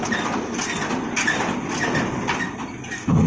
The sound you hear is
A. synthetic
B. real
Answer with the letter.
B